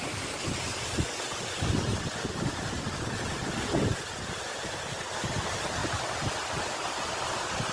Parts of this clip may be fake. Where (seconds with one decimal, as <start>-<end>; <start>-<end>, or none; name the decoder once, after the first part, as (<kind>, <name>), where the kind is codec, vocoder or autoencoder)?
1.9-2.5 (vocoder, BigVGAN v2)